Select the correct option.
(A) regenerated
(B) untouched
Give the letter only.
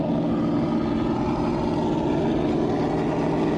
B